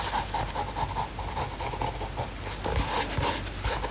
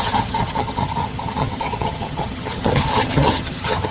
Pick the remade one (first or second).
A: second